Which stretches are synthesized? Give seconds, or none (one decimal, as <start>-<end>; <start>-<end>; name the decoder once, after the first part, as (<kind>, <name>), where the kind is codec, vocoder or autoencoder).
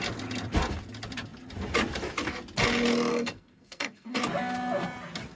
3.1-4.2 (codec, SNAC)